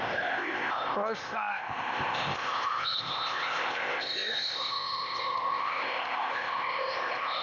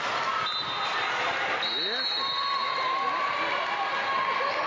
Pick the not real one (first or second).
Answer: first